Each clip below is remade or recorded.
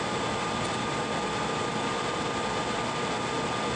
recorded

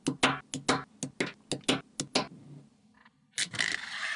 recorded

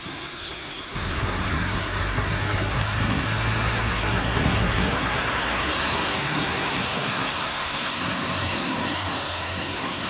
remade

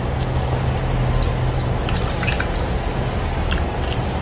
recorded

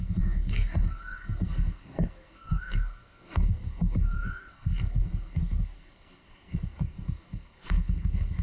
remade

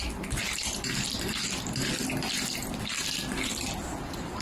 recorded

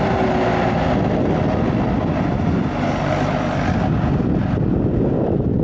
recorded